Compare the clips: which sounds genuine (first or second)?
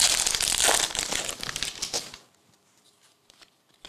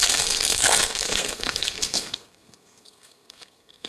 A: first